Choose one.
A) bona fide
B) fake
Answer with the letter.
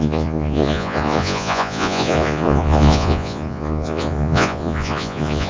B